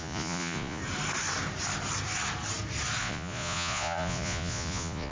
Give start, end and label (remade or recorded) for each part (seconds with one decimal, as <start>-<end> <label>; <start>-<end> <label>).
0.0-0.8 remade; 0.8-3.0 recorded; 3.0-5.1 remade